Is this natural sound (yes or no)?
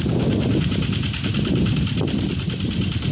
yes